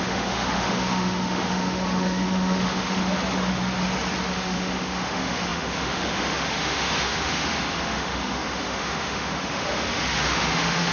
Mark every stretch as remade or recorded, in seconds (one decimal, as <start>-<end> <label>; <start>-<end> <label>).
0.0-3.0 remade; 3.0-4.3 recorded; 4.3-10.9 remade